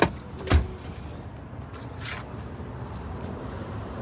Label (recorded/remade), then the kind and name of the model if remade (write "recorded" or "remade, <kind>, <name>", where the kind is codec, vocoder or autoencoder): recorded